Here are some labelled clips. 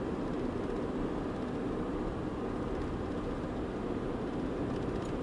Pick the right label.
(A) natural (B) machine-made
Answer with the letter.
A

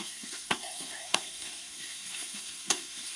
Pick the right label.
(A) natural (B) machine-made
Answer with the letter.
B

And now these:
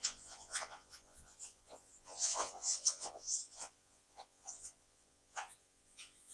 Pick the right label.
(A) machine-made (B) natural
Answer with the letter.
A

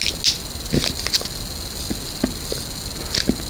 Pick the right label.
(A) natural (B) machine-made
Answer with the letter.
A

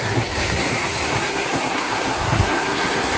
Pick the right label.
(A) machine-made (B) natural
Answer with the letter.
A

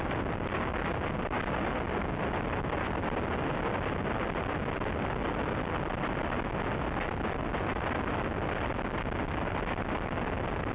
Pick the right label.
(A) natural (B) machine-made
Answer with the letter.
A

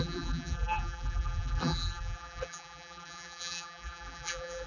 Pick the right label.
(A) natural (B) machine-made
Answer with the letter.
B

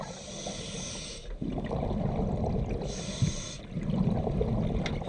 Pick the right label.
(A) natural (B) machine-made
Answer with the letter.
A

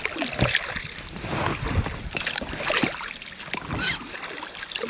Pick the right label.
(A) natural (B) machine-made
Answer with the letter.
A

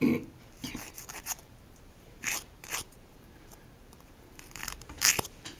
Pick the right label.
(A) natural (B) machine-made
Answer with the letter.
B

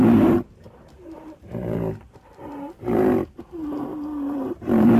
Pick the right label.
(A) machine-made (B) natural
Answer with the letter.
A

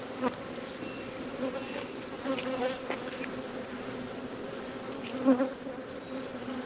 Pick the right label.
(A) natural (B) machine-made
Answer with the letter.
A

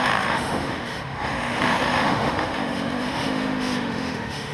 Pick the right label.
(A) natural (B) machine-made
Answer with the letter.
B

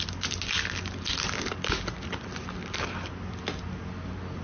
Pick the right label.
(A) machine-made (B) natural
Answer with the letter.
B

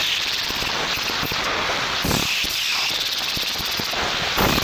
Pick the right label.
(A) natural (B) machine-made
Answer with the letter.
A